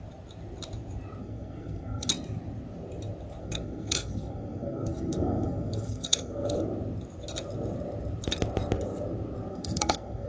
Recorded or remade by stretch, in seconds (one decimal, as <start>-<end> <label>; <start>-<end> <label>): 0.0-1.2 recorded; 1.2-2.1 remade; 2.1-3.4 recorded; 3.4-6.6 remade; 6.6-9.5 recorded; 9.5-10.3 remade